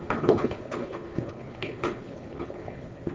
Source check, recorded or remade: remade